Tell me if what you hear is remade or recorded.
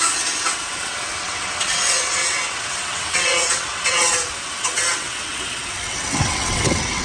remade